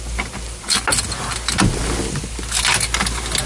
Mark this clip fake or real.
real